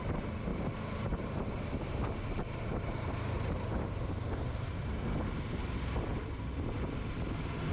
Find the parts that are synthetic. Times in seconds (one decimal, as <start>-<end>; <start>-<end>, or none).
0.5-4.8